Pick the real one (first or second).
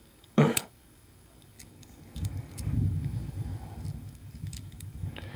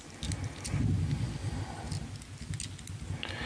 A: second